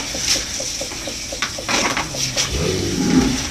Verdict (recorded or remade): recorded